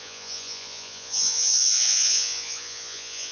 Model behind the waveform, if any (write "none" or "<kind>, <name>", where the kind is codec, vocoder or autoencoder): vocoder, Vocos